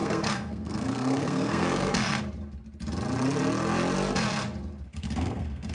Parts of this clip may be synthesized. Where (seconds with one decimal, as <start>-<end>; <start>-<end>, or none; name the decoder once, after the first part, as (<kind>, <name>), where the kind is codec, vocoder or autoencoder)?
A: 0.0-2.2 (codec, SNAC); 4.9-5.7